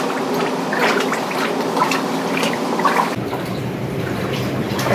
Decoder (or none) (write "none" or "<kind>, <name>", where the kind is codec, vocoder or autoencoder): vocoder, BigVGAN v2